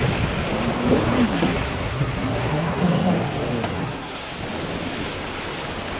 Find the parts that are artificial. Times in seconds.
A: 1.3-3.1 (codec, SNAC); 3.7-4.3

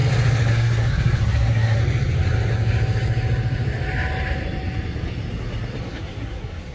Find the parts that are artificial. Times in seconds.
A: 0.5-1.8 (codec, SNAC); 5.8-6.7

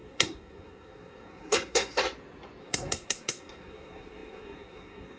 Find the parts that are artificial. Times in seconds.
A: 0.0-2.0 (codec, SNAC); 2.6-5.2

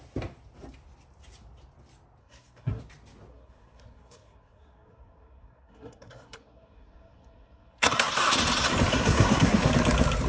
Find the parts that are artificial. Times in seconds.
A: 2.2-2.8 (codec, SNAC); 3.3-8.1; 8.9-9.7

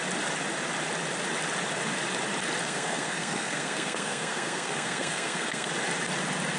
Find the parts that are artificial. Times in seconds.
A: 2.6-5.7 (codec, SNAC)